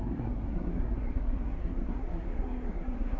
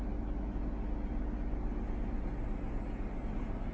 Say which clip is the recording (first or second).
second